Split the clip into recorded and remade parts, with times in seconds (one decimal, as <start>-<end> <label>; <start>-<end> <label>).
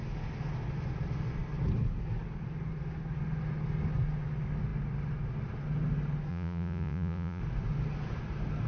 0.0-6.3 recorded; 6.3-7.4 remade; 7.4-8.7 recorded